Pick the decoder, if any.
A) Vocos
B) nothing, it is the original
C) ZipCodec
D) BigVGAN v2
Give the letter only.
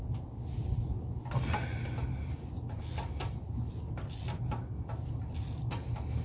B